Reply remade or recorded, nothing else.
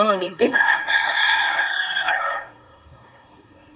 remade